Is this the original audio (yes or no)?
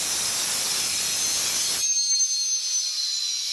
yes